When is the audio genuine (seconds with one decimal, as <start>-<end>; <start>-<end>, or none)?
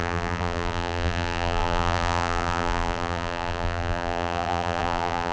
none